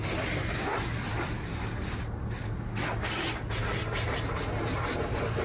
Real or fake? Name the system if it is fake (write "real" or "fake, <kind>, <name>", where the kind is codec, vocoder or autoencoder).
real